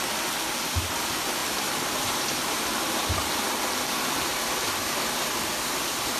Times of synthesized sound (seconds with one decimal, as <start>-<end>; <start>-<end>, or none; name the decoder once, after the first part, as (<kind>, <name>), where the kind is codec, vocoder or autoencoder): 1.4-3.3 (vocoder, BigVGAN v2)